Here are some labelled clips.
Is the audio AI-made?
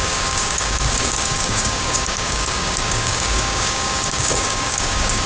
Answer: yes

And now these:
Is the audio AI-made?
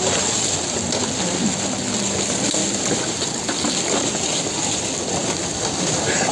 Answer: no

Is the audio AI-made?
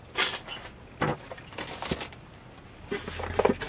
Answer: no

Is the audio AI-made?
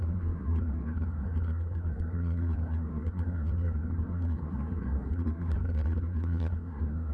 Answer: yes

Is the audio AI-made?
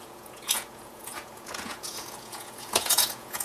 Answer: yes